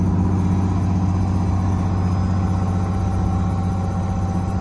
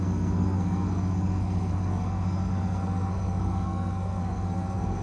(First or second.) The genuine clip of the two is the first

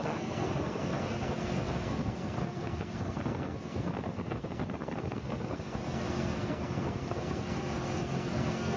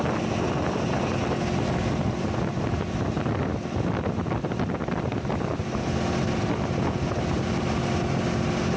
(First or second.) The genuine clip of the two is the second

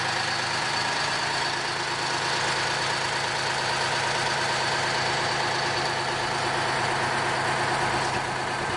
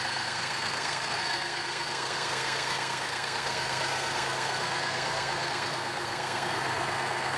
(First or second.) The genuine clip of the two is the first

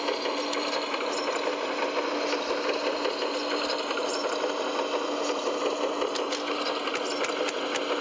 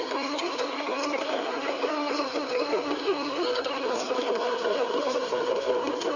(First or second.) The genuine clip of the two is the first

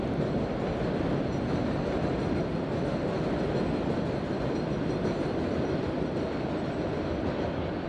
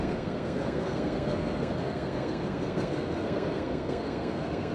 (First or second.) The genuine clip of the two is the first